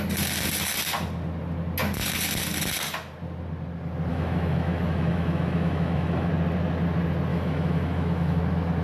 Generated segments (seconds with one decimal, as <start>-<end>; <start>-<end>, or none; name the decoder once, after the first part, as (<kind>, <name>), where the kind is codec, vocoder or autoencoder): 4.1-6.3 (autoencoder, DAC-VAE); 7.3-8.4